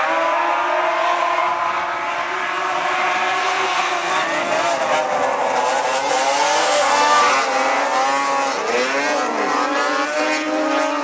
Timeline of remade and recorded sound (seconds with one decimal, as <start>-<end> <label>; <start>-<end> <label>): 0.0-3.4 recorded; 3.4-4.1 remade; 4.1-6.6 recorded; 6.6-7.2 remade; 7.2-11.0 recorded